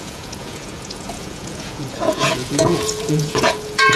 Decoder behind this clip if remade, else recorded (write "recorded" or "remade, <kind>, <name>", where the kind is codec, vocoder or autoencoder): remade, vocoder, Vocos